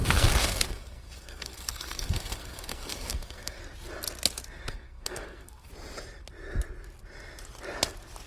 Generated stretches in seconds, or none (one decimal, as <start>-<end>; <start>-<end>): 0.0-3.6; 4.7-5.7